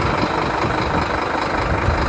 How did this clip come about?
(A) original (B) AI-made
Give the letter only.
A